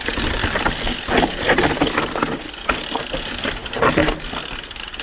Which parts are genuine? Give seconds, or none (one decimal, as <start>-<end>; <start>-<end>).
0.0-5.0